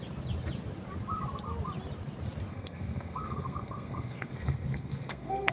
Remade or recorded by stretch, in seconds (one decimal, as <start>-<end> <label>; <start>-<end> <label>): 0.0-2.5 recorded; 2.5-5.5 remade